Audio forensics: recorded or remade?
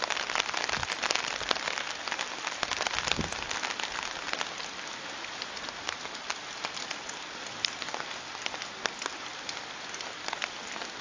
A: recorded